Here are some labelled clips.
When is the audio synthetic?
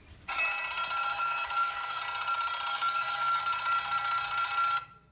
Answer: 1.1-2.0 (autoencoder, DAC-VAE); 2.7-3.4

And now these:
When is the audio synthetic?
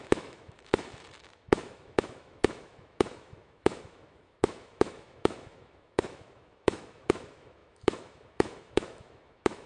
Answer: 0.0-9.7 (autoencoder, DAC-VAE)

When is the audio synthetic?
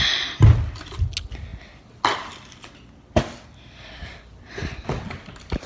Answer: none